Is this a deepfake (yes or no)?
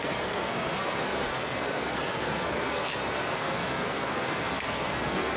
yes